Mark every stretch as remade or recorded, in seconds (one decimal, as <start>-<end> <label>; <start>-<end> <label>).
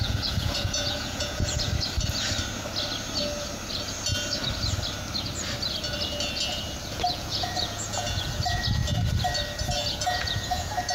0.0-1.7 remade; 1.7-6.9 recorded; 6.9-8.8 remade; 8.8-9.9 recorded; 9.9-10.9 remade